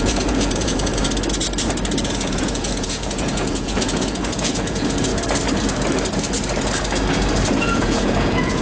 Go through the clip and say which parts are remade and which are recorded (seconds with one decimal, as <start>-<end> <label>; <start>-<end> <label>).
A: 0.0-1.0 remade; 1.0-2.0 recorded; 2.0-5.1 remade; 5.1-7.5 recorded; 7.5-8.6 remade